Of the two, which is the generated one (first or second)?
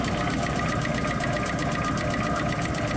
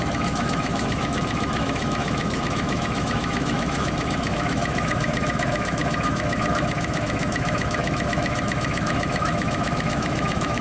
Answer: second